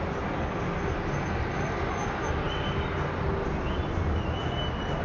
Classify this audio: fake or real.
real